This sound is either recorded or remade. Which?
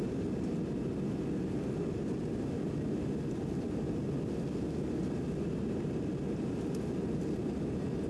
recorded